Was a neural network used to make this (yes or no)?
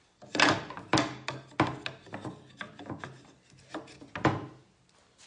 no